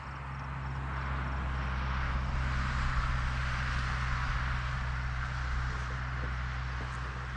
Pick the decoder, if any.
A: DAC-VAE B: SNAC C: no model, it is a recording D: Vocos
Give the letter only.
C